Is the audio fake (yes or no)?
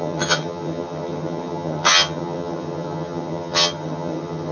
yes